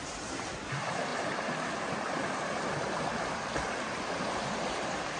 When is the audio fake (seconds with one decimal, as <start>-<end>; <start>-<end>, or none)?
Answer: 0.0-1.1; 4.2-5.2